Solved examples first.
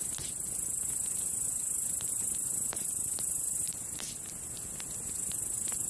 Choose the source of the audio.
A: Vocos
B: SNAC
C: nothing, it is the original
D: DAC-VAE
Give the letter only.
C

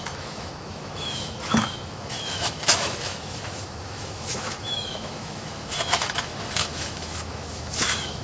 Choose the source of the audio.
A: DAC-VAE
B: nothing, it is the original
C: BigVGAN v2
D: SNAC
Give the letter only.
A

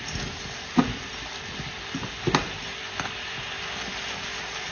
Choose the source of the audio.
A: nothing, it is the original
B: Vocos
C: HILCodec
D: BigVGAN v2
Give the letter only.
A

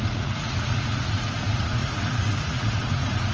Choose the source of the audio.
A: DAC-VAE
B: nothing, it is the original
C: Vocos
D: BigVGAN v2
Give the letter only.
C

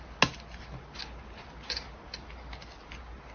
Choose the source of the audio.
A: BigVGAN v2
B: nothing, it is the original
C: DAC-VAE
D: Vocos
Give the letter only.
B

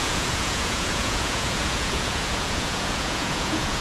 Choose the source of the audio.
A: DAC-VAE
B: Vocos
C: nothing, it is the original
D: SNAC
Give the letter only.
B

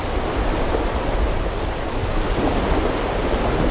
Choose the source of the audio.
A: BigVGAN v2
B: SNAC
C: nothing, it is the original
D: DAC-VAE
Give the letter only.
C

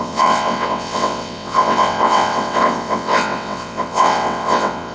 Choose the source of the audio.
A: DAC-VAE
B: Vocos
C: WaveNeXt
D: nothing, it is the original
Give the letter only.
C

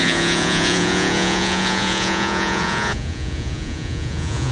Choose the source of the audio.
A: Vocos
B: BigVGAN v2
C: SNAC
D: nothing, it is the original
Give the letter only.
A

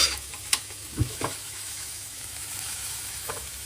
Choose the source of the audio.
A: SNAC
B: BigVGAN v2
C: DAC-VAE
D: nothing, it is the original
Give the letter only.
C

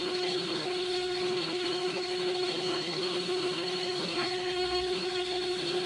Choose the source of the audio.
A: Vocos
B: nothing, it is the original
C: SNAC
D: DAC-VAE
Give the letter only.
C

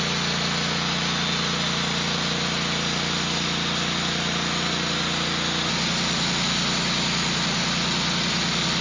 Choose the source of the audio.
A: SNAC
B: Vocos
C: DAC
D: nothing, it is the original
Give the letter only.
D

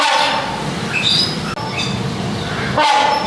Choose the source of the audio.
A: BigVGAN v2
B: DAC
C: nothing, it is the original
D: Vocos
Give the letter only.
C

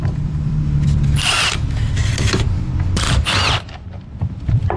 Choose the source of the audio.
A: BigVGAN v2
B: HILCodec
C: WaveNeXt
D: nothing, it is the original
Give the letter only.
A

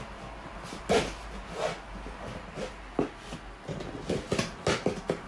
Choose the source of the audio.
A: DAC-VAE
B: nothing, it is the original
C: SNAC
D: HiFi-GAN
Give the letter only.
B